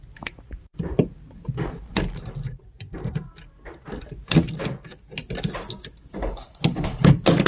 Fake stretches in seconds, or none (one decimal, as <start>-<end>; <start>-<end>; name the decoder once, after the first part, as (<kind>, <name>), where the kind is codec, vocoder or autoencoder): 6.1-7.1 (codec, HILCodec)